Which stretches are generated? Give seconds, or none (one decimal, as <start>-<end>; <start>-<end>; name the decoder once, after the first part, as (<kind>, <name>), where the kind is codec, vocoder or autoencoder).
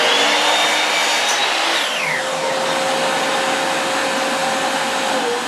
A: none